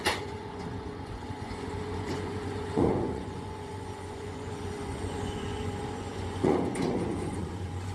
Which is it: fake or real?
fake